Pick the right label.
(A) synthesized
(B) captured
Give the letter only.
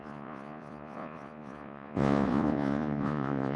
A